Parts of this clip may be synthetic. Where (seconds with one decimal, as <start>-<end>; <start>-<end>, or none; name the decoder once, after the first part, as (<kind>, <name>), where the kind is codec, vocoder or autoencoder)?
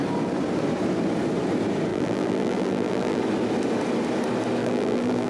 1.9-3.2 (vocoder, BigVGAN v2); 4.6-5.3